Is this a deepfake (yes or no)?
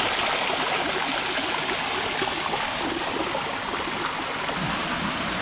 no